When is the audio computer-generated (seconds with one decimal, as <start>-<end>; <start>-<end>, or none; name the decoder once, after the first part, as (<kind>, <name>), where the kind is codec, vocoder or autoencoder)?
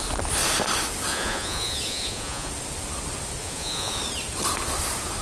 1.1-2.5 (vocoder, Vocos); 3.4-4.0